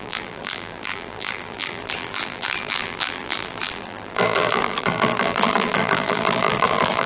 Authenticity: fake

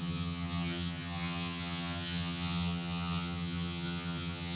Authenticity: fake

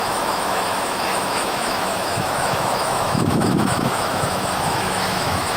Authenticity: fake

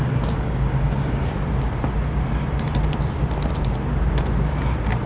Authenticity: real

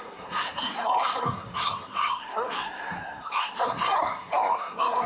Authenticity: fake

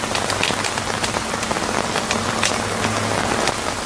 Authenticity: real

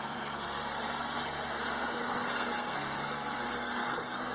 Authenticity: fake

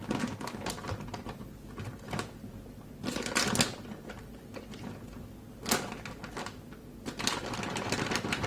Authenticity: real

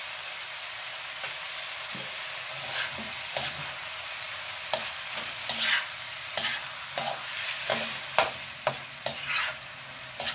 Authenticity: real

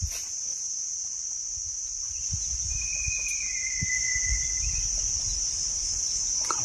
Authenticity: fake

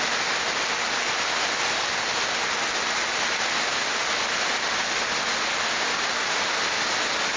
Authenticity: real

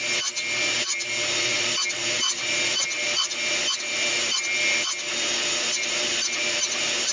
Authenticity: real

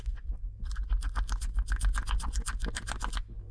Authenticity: real